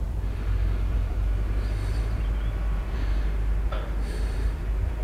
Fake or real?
fake